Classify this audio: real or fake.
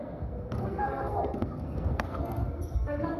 fake